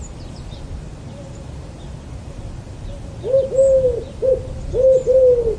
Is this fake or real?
real